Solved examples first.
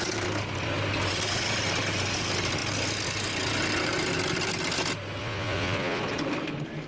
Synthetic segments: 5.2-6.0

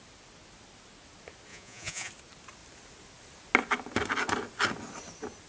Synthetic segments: 1.5-2.1

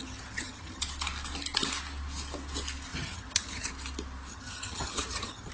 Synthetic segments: 0.0-0.8; 2.9-3.7; 4.3-5.5

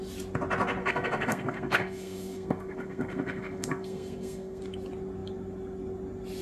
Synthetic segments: 0.8-4.6

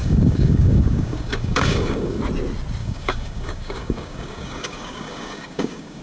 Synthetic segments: 0.0-2.2; 2.8-6.0

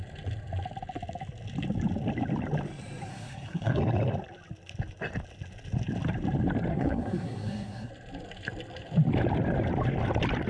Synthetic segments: 3.1-3.8; 6.7-7.9